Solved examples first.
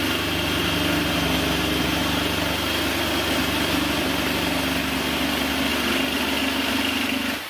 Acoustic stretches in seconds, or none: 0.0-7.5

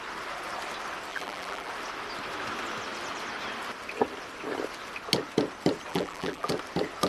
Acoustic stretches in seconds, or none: 0.0-1.1; 1.7-5.9; 6.5-7.1